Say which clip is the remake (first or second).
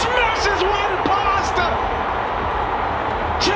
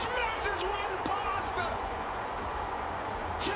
second